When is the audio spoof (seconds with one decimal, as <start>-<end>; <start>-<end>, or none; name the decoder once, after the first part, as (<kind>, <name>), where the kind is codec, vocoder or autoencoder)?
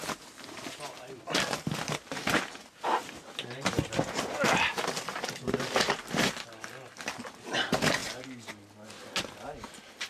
none